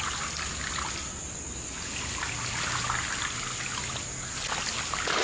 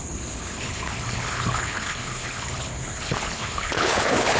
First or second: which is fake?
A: second